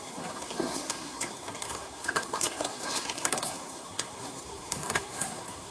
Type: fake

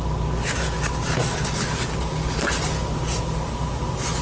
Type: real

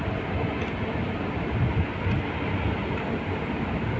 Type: real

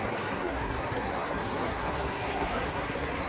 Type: fake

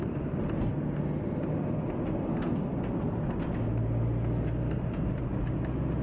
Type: real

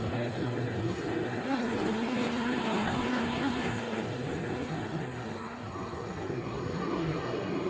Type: fake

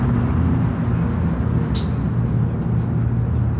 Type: real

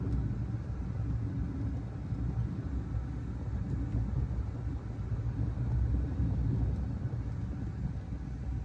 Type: real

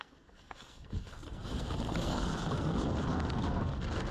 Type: fake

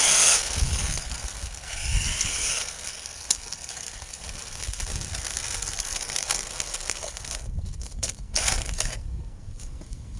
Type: fake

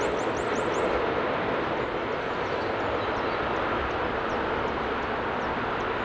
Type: real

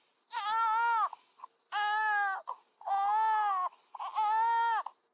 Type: real